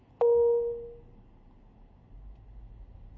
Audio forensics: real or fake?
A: real